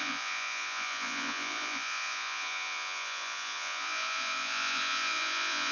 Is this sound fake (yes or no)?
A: yes